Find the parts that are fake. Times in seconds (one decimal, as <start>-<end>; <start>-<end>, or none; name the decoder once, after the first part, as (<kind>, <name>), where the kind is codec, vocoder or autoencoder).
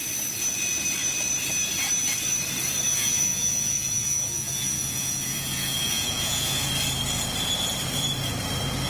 2.9-6.7 (vocoder, Vocos)